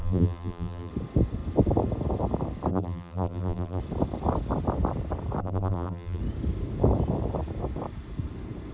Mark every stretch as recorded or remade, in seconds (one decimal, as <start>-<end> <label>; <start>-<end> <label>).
0.0-0.9 remade; 0.9-2.7 recorded; 2.7-3.8 remade; 3.8-5.4 recorded; 5.4-6.2 remade; 6.2-8.7 recorded